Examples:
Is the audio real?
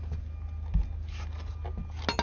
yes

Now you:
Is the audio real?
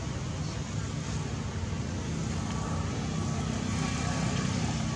yes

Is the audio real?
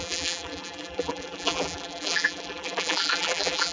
no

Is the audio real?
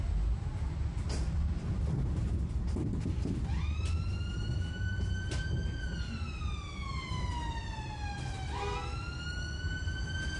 yes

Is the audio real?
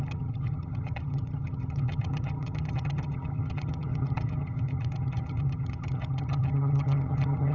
no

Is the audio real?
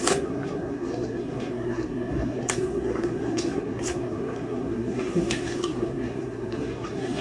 no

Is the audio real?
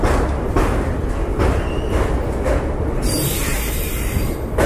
yes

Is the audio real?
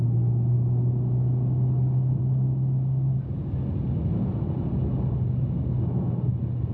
yes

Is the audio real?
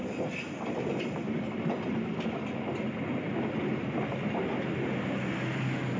yes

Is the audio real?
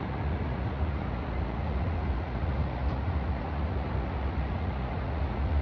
no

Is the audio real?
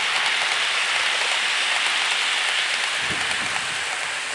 yes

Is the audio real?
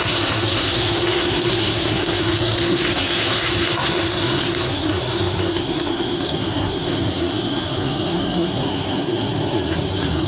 no